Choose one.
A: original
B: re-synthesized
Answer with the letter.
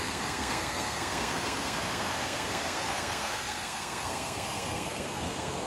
B